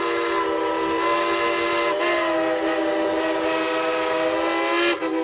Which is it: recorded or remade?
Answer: recorded